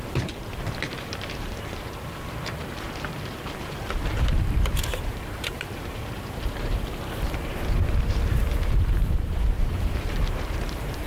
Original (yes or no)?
no